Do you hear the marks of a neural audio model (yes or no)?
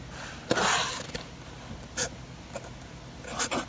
no